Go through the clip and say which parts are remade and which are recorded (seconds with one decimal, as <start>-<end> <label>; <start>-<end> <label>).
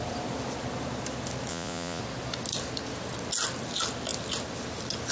0.0-1.5 recorded; 1.5-2.0 remade; 2.0-5.1 recorded